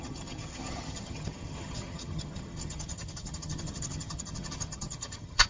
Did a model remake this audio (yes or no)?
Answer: yes